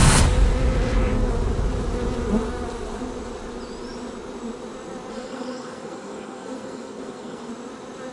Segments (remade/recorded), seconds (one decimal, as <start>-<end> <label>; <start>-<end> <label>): 0.0-5.1 recorded; 5.1-7.5 remade; 7.5-8.1 recorded

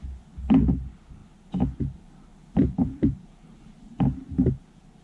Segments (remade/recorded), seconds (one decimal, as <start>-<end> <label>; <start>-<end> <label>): 0.0-2.3 recorded; 2.3-4.5 remade; 4.5-5.0 recorded

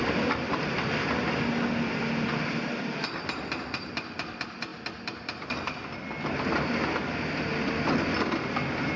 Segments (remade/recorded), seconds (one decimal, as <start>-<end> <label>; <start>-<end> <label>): 0.0-9.0 recorded

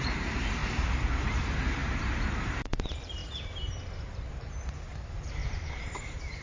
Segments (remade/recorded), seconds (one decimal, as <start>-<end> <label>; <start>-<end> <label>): 0.0-3.2 remade; 3.2-4.1 recorded; 4.1-6.4 remade

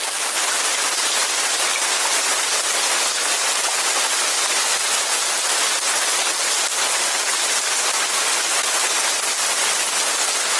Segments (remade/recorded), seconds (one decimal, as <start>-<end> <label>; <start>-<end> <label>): 0.0-10.6 recorded

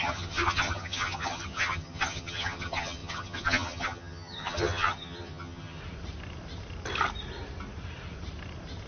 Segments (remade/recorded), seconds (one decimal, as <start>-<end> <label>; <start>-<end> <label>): 0.0-5.8 remade; 5.8-8.9 recorded